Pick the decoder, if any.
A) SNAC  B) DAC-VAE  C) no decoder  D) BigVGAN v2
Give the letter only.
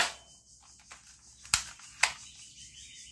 C